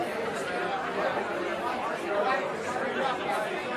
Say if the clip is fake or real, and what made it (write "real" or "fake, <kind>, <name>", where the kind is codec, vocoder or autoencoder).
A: real